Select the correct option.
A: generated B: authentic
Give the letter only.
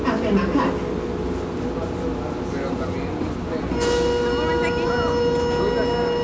B